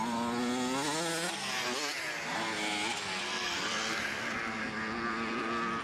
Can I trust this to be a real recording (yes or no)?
yes